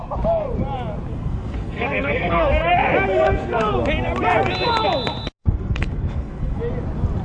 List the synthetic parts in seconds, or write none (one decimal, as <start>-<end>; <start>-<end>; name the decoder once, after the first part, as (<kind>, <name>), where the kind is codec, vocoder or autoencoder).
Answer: 1.1-2.7 (codec, SNAC); 3.1-3.7; 5.4-6.6